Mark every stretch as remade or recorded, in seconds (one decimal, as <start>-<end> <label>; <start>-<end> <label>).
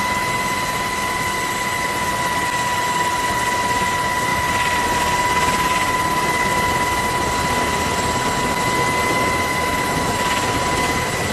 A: 0.0-11.3 recorded